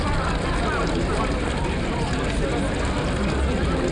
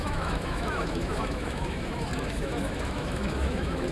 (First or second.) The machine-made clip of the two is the second